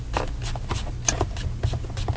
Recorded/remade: recorded